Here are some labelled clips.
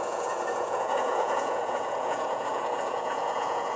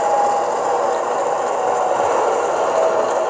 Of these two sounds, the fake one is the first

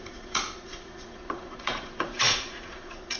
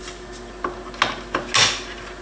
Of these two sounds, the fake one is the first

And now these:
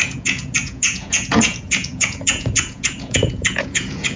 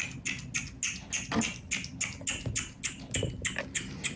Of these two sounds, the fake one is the first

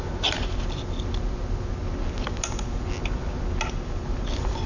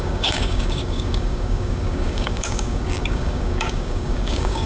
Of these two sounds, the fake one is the second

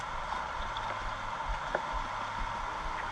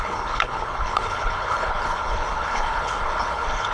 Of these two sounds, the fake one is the second